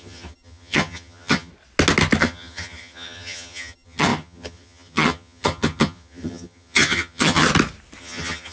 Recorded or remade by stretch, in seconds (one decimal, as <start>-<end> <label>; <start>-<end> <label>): 0.0-1.5 remade; 1.5-2.2 recorded; 2.2-7.5 remade; 7.5-8.0 recorded; 8.0-8.5 remade

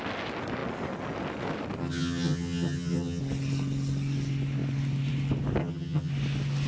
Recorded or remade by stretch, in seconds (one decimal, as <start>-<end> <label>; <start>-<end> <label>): 0.0-1.8 recorded; 1.8-3.2 remade; 3.2-5.6 recorded; 5.6-6.1 remade; 6.1-6.7 recorded

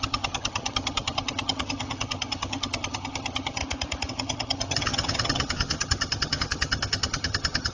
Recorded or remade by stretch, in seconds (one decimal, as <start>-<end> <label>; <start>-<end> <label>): 0.0-3.6 remade; 3.6-4.1 recorded; 4.1-7.7 remade

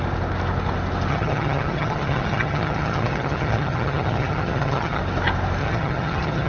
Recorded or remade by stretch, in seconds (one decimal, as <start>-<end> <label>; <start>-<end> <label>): 0.0-1.1 recorded; 1.1-5.0 remade; 5.0-5.6 recorded; 5.6-6.5 remade